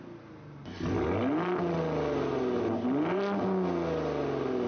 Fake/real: real